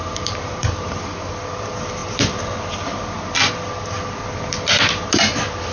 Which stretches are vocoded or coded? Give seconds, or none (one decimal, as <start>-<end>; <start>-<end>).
0.0-1.3